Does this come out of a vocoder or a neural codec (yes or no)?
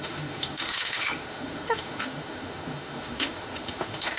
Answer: yes